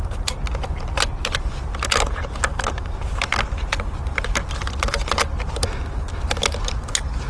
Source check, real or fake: real